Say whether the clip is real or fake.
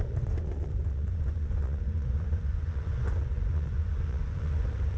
fake